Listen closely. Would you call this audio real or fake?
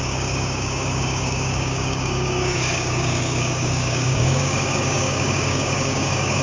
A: fake